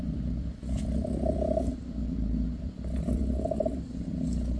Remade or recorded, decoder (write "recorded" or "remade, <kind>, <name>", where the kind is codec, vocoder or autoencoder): remade, vocoder, BigVGAN v2